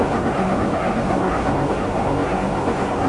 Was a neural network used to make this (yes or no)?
yes